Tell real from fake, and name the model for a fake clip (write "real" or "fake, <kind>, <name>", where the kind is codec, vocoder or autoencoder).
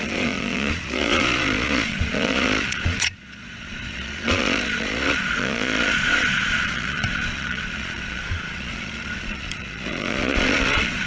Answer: fake, vocoder, Vocos